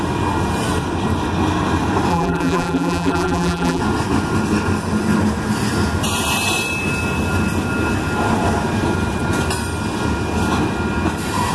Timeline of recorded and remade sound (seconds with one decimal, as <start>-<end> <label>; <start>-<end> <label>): 0.0-2.1 recorded; 2.1-3.8 remade; 3.8-11.5 recorded